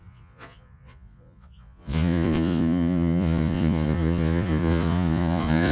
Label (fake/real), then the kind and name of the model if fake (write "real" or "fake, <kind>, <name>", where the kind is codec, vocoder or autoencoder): fake, vocoder, Vocos